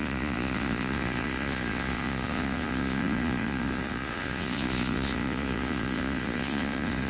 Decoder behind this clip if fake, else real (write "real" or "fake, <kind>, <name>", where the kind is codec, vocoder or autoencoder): fake, vocoder, Vocos